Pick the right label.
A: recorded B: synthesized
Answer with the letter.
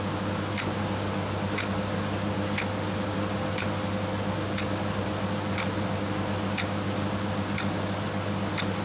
A